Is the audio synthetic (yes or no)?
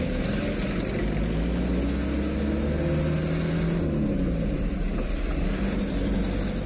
no